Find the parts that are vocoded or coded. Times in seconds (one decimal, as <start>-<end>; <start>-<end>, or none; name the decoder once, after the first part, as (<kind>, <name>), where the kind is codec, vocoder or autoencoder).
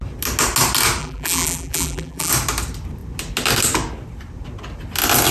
1.0-2.3 (vocoder, BigVGAN v2)